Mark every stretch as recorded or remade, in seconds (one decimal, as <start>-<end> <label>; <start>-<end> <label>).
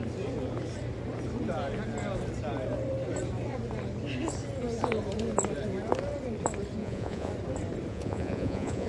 0.0-6.8 recorded; 6.8-7.3 remade; 7.3-7.9 recorded; 7.9-8.9 remade